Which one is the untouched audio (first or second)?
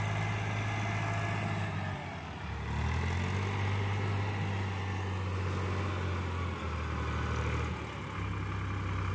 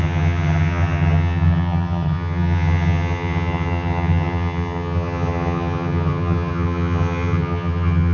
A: first